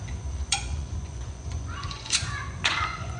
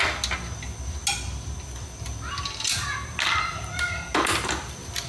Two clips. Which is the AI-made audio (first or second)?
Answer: first